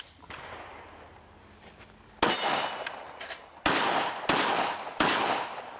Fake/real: real